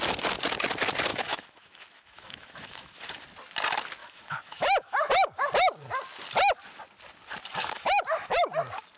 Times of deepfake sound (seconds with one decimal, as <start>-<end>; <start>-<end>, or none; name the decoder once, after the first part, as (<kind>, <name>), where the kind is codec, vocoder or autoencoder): 1.1-3.0 (autoencoder, DAC-VAE); 4.0-5.1; 7.6-8.4